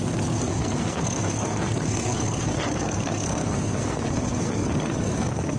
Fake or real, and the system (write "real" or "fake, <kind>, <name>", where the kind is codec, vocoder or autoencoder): fake, codec, SNAC